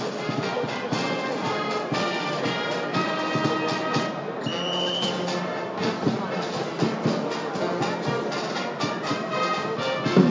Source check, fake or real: real